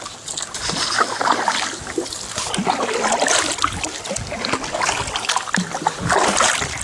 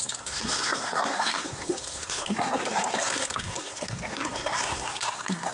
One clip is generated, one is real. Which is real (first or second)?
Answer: first